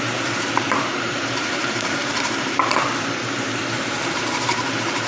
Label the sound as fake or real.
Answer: fake